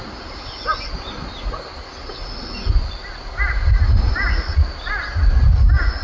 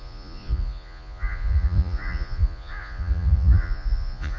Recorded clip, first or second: first